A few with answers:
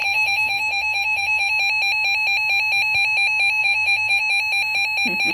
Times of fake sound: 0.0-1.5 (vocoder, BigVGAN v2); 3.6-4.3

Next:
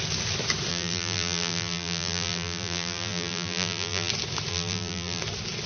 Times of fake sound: 0.7-4.1 (vocoder, BigVGAN v2); 4.5-5.2

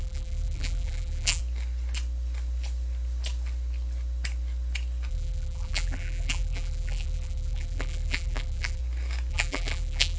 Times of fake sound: 0.0-1.4 (vocoder, BigVGAN v2); 5.1-8.8; 9.3-10.2

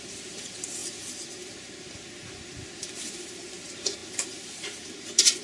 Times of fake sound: 0.0-5.4 (vocoder, BigVGAN v2)